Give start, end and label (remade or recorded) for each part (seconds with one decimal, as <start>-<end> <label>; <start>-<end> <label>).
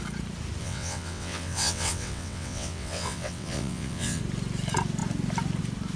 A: 0.0-0.6 recorded; 0.6-4.2 remade; 4.2-6.0 recorded